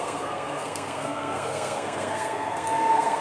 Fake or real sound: fake